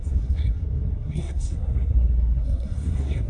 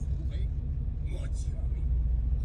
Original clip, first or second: second